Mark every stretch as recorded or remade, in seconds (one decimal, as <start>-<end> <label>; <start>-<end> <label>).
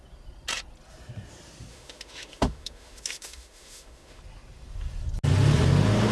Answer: 0.0-1.7 recorded; 1.7-4.2 remade; 4.2-6.1 recorded